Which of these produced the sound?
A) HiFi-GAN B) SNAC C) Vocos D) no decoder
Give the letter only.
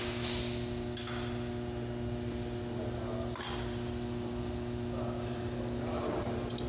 D